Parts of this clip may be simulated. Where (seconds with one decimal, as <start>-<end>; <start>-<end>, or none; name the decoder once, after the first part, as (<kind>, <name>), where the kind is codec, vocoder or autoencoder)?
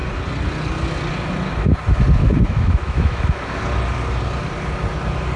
2.2-3.6 (autoencoder, DAC-VAE)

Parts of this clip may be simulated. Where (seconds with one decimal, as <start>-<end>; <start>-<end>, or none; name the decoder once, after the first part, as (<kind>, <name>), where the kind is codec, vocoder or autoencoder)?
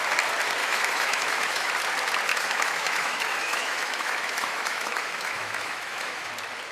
0.6-1.7 (autoencoder, DAC-VAE); 2.3-6.3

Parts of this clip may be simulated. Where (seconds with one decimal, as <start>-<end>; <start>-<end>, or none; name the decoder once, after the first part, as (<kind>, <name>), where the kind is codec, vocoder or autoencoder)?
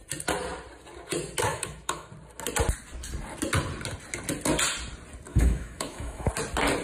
1.5-2.1 (autoencoder, DAC-VAE); 5.3-6.3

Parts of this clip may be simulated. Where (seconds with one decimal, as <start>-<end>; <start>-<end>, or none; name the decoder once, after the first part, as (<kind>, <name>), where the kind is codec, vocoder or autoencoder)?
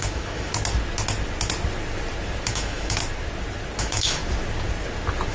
0.0-0.5 (autoencoder, DAC-VAE); 2.5-3.0; 3.8-4.2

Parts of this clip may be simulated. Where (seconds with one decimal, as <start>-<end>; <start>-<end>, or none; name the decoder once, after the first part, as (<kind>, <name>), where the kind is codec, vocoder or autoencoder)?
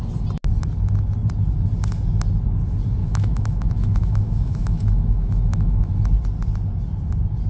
3.0-5.9 (autoencoder, DAC-VAE)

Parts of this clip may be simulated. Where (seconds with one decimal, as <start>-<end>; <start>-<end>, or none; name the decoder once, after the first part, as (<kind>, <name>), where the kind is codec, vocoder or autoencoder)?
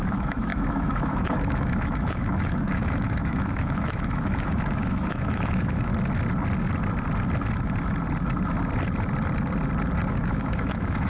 0.0-5.9 (autoencoder, DAC-VAE); 10.1-11.1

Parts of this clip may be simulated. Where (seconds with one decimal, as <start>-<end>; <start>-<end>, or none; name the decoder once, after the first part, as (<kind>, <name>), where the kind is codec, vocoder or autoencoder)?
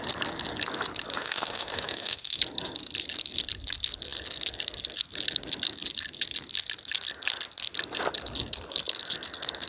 1.1-2.4 (autoencoder, DAC-VAE)